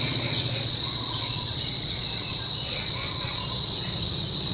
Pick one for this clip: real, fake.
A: fake